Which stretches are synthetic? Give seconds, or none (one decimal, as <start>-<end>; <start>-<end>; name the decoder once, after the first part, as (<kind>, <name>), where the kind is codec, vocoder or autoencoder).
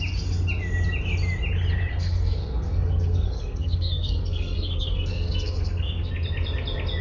1.9-6.1 (codec, SNAC)